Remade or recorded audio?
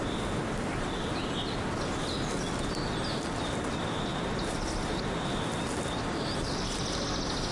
recorded